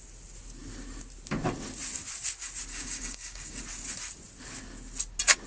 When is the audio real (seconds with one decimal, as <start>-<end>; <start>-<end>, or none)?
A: 0.0-2.7; 3.6-5.5